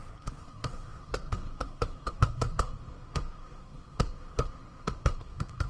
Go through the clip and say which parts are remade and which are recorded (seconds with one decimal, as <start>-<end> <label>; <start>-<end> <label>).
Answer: 0.0-5.7 remade